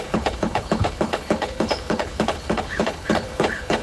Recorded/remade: remade